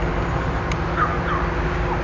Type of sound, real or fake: real